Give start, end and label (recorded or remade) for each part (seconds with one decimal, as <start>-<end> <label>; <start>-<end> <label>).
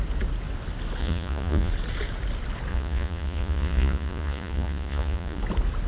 0.0-1.0 recorded; 1.0-1.7 remade; 1.7-2.7 recorded; 2.7-5.4 remade; 5.4-5.9 recorded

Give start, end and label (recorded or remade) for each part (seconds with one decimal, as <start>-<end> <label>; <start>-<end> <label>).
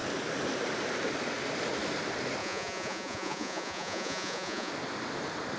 0.0-2.4 recorded; 2.4-4.7 remade; 4.7-5.6 recorded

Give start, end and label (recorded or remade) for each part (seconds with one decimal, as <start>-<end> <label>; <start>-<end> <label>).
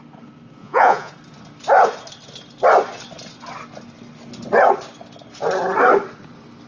0.0-0.6 recorded; 0.6-1.1 remade; 1.1-6.7 recorded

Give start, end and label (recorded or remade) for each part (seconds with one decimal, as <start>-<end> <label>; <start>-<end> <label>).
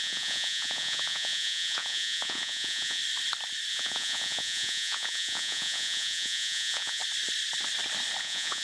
0.0-3.0 remade; 3.0-3.7 recorded; 3.7-7.0 remade; 7.0-8.2 recorded; 8.2-8.6 remade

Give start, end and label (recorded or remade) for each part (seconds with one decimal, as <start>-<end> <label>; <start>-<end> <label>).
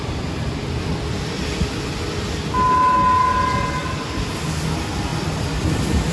0.0-6.1 recorded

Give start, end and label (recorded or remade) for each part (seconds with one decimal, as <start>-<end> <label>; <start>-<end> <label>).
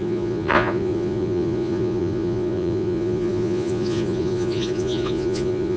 0.0-5.8 remade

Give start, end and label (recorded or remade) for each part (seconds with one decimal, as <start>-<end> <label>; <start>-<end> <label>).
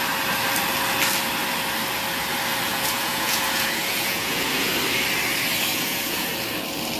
0.0-2.7 recorded; 2.7-4.7 remade; 4.7-5.7 recorded; 5.7-6.3 remade; 6.3-7.0 recorded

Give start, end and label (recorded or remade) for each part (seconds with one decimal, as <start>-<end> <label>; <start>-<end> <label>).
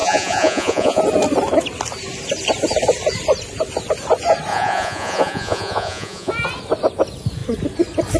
0.0-1.0 remade; 1.0-4.5 recorded; 4.5-6.3 remade; 6.3-8.2 recorded